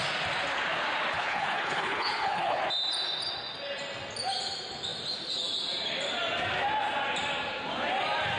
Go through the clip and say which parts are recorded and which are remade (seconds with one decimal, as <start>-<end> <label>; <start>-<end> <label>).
0.0-1.1 recorded; 1.1-2.6 remade; 2.6-8.4 recorded